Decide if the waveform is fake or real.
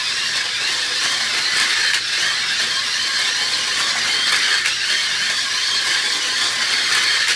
real